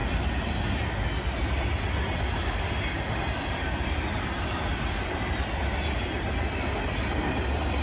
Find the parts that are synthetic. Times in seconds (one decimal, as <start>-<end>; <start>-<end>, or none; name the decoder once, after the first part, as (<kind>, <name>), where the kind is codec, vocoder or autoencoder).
none